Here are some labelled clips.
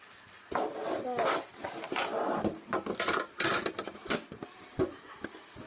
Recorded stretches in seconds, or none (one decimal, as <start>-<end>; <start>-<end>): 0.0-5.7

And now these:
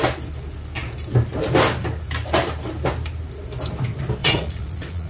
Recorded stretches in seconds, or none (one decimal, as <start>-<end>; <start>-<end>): 0.0-4.2

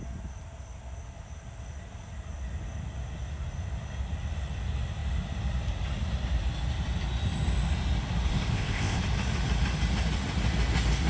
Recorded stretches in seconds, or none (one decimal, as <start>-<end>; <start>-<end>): 0.0-8.3; 9.0-11.1

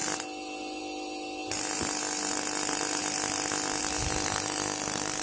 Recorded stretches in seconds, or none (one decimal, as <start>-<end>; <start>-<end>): 0.0-5.2

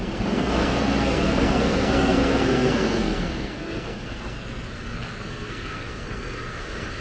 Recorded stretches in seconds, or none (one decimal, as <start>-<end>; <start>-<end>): none

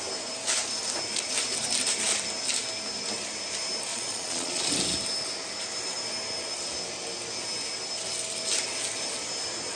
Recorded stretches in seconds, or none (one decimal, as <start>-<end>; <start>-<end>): 0.0-3.9; 4.7-9.8